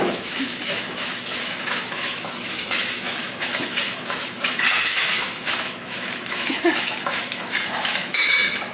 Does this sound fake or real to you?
fake